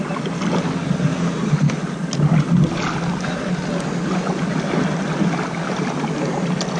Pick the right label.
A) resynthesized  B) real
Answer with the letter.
B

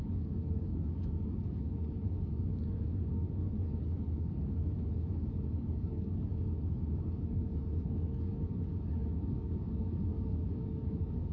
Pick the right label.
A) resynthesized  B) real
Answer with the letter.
A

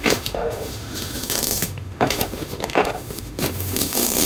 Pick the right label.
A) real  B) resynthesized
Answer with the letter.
B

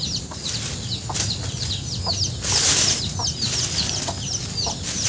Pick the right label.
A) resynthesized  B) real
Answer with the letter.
B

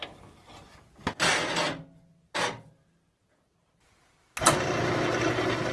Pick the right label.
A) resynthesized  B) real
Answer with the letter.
B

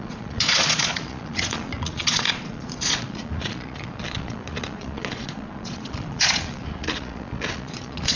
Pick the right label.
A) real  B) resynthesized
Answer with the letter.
B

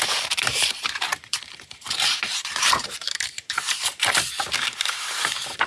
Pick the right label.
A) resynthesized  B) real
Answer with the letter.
A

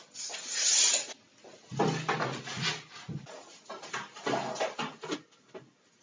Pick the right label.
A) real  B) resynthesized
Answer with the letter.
A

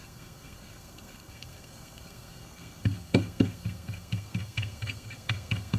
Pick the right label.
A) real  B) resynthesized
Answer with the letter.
B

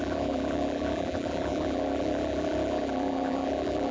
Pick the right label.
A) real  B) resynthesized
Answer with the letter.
B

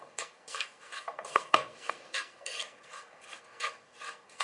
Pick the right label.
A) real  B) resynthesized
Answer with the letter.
B